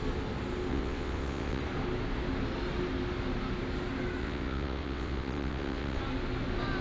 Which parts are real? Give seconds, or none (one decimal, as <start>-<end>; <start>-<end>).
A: 0.0-0.7; 1.6-4.2; 6.0-6.8